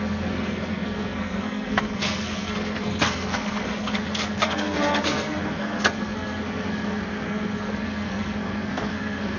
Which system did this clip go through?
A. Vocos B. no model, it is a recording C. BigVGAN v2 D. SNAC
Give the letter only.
D